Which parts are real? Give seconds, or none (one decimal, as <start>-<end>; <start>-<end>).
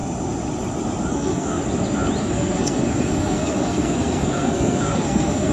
0.0-1.1; 1.6-2.2